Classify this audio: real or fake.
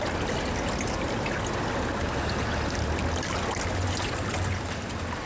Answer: real